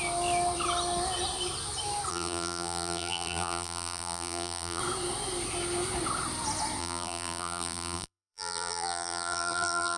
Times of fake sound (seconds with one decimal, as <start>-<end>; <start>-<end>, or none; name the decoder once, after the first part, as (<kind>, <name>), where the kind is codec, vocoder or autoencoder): 2.1-4.8 (vocoder, BigVGAN v2); 6.8-10.0